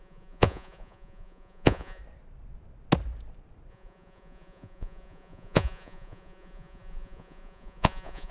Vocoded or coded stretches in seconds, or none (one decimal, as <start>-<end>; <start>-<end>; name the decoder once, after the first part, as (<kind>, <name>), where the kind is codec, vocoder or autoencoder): 0.0-2.0 (vocoder, Vocos); 3.7-8.3